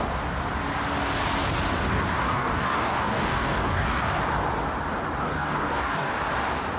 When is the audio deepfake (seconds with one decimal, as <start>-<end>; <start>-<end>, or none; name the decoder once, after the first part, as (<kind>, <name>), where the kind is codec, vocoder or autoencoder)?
2.2-4.2 (codec, DAC); 5.2-6.1